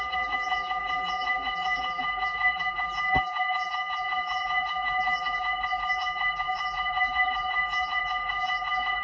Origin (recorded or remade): remade